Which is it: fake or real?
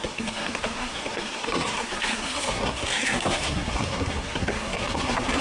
fake